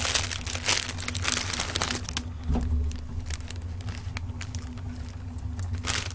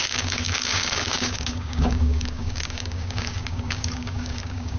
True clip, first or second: first